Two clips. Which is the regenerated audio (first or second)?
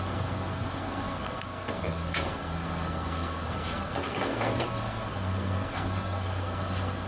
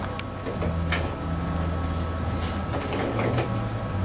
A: first